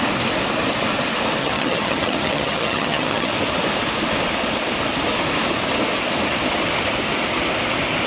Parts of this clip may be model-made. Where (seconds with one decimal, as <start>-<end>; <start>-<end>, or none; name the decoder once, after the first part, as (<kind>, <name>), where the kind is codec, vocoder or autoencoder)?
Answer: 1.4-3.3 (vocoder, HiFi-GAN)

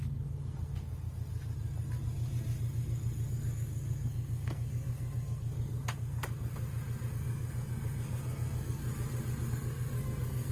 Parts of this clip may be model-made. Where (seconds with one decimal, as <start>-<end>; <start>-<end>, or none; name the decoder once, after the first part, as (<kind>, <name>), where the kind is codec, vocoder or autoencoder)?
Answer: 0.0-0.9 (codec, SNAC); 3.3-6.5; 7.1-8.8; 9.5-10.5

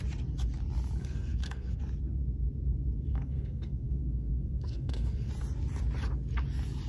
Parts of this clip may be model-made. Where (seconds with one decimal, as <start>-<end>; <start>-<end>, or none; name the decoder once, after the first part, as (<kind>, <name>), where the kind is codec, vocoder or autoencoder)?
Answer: 1.0-1.8 (codec, SNAC); 3.1-5.3